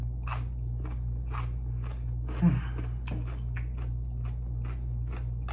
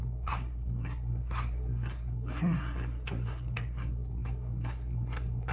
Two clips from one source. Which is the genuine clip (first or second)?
first